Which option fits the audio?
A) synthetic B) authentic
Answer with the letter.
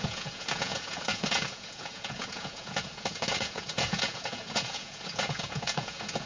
A